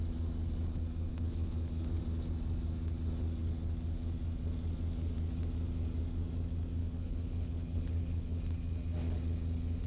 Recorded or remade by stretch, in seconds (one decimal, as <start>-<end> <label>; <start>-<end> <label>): 0.0-1.1 recorded; 1.1-2.0 remade; 2.0-6.8 recorded; 6.8-8.4 remade; 8.4-9.9 recorded